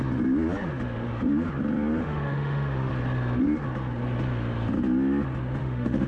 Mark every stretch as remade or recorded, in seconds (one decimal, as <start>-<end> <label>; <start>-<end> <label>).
0.0-2.0 recorded; 2.0-2.9 remade; 2.9-5.6 recorded; 5.6-6.1 remade